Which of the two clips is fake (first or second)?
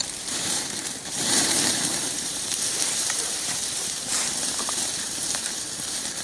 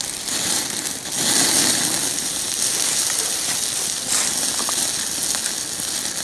first